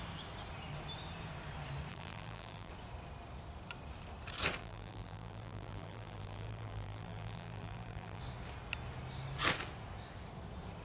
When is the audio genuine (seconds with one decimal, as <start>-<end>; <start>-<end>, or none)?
0.0-1.9; 2.7-4.6; 8.2-10.8